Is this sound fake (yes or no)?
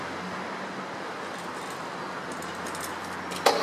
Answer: no